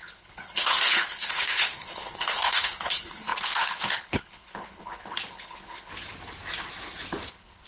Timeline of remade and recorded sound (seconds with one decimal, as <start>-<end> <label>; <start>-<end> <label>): 0.0-5.9 remade; 5.9-7.3 recorded; 7.3-7.7 remade